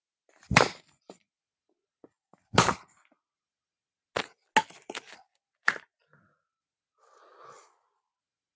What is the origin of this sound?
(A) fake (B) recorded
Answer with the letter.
B